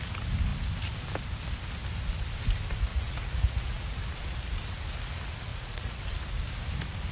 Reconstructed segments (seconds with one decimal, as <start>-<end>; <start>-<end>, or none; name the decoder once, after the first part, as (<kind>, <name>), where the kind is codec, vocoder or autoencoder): 2.9-4.0 (vocoder, Vocos); 5.5-6.0